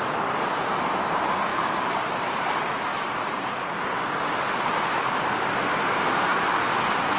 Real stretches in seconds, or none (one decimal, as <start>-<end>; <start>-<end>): 0.0-1.5; 2.5-7.2